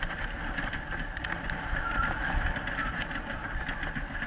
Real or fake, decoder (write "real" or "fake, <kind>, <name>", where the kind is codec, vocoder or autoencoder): real